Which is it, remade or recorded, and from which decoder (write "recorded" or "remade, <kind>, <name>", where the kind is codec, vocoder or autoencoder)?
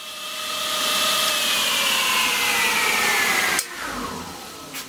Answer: remade, vocoder, BigVGAN v2